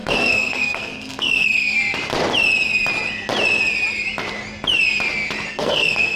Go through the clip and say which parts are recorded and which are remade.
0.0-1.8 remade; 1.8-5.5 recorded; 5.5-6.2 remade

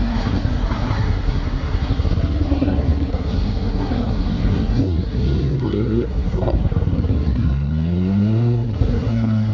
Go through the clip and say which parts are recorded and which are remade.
0.0-9.5 remade

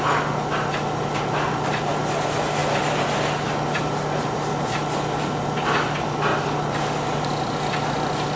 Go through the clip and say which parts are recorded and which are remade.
0.0-8.4 recorded

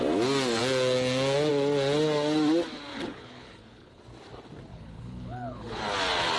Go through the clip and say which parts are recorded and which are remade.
0.0-2.9 recorded; 2.9-4.0 remade; 4.0-4.7 recorded; 4.7-5.8 remade; 5.8-6.4 recorded

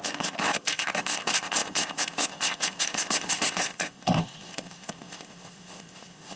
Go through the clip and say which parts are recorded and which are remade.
0.0-6.4 remade

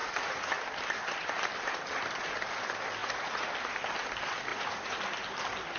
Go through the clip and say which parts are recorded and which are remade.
0.0-0.5 remade; 0.5-3.0 recorded; 3.0-3.5 remade; 3.5-4.5 recorded; 4.5-5.0 remade; 5.0-5.8 recorded

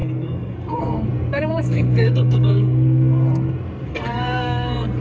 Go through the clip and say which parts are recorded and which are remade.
0.0-5.0 remade